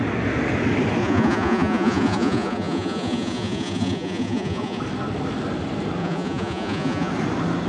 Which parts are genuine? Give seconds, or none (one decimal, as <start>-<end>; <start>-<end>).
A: 0.0-1.0; 4.8-6.0; 7.1-7.7